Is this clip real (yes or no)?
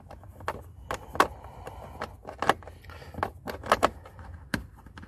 yes